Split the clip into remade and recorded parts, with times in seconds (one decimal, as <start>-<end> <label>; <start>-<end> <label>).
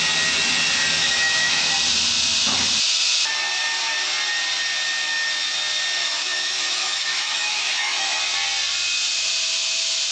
0.0-1.0 recorded; 1.0-1.7 remade; 1.7-6.0 recorded; 6.0-8.2 remade; 8.2-10.1 recorded